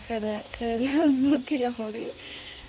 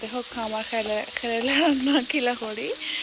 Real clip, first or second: second